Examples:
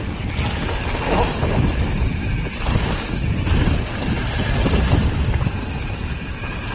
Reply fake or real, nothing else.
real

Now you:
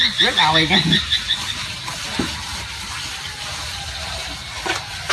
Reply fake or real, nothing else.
real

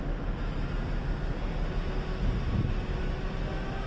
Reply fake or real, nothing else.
real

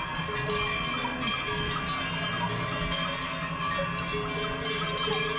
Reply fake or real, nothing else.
real